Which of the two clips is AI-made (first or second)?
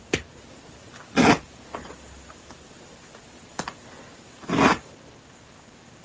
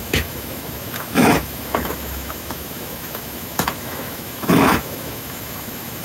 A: second